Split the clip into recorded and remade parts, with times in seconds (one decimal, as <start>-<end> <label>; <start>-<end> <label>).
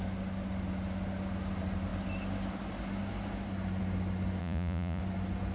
0.0-4.4 recorded; 4.4-5.0 remade; 5.0-5.5 recorded